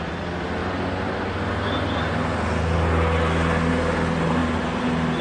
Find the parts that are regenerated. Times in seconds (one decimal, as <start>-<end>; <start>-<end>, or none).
none